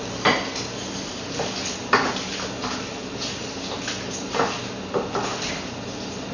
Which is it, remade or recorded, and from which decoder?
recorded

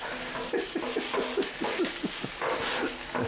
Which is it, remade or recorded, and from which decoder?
recorded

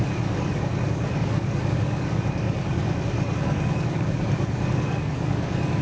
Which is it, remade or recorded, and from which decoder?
remade, codec, DAC